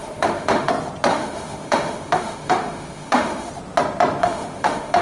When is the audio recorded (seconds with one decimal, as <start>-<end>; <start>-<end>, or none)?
0.7-1.1; 3.5-4.2